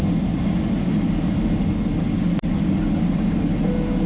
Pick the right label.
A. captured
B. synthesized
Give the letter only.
A